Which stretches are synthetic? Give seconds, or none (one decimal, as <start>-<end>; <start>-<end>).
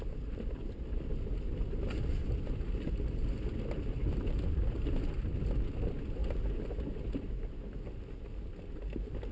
none